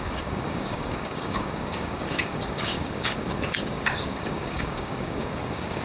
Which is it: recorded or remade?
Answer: remade